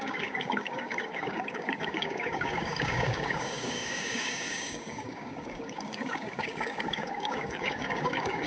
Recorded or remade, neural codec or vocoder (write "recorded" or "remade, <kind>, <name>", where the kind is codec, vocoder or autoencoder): remade, codec, DAC